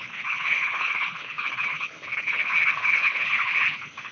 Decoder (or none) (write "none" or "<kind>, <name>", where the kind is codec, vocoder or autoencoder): codec, HILCodec